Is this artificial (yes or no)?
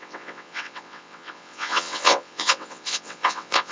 yes